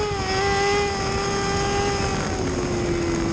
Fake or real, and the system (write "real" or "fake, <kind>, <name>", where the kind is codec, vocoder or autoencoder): real